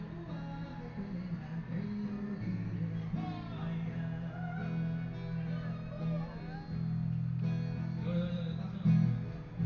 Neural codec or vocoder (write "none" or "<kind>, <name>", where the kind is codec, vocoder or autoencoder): none